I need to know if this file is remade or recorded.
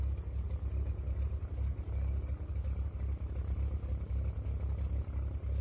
recorded